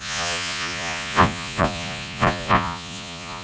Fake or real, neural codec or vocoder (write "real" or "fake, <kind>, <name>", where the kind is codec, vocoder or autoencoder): fake, vocoder, Vocos